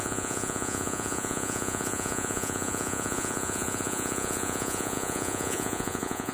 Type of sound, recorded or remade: remade